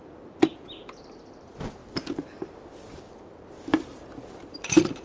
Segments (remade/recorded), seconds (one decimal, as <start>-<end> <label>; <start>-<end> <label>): 0.0-5.0 recorded